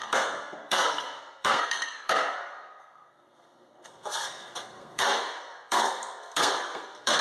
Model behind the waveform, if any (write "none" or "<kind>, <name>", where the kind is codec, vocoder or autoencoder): codec, SNAC